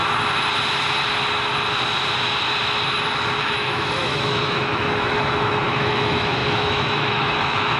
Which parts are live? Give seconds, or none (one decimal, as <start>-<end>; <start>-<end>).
0.0-3.4